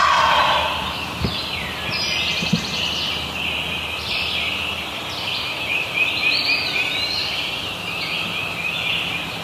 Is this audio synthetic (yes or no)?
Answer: no